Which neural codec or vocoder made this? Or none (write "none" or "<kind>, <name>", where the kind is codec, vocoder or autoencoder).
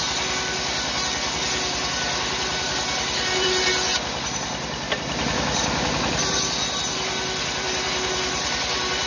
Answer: none